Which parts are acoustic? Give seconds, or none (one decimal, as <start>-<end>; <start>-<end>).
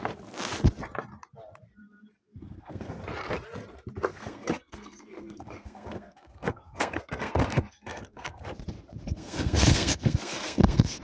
0.0-2.2; 2.9-4.1; 8.4-9.0